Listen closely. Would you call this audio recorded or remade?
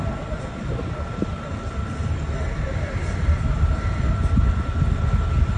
remade